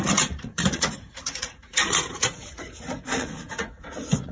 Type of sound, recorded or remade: remade